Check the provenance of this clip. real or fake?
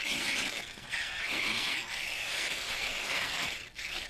fake